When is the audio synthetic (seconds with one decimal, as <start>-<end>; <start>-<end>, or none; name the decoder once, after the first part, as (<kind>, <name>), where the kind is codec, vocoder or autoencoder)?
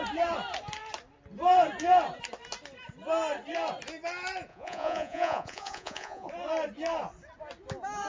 4.5-6.3 (vocoder, Vocos)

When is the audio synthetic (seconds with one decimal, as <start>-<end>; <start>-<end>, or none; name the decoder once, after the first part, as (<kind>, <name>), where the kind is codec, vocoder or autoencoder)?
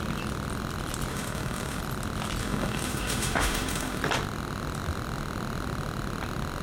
1.1-1.8 (autoencoder, DAC-VAE); 2.4-4.0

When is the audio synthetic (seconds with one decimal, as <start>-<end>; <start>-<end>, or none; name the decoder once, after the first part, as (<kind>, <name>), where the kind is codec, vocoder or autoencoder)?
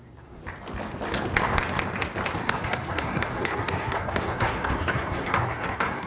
0.0-0.4 (codec, SNAC); 2.4-6.1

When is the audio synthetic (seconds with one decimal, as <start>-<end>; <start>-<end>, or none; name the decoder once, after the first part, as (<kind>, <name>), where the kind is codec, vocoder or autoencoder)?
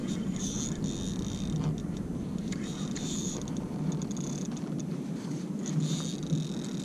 0.0-0.6 (vocoder, BigVGAN v2); 1.8-5.9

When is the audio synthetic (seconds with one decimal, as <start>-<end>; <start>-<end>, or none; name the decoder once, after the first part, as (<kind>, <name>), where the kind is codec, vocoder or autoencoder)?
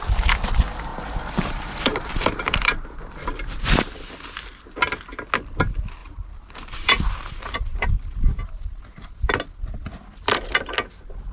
0.9-3.6 (vocoder, BigVGAN v2); 6.0-8.4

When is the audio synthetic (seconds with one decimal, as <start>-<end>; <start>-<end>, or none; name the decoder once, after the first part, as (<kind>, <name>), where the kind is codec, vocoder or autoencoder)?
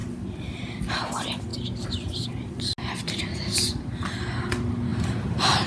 4.9-5.7 (vocoder, BigVGAN v2)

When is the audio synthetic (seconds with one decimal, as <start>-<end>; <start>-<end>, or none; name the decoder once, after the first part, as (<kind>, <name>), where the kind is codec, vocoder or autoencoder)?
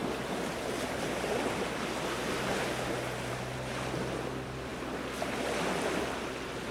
none